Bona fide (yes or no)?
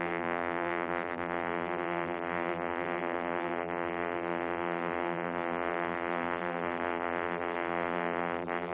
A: no